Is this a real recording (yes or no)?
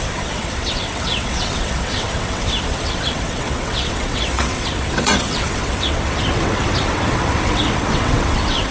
no